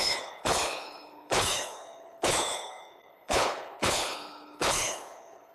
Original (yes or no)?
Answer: no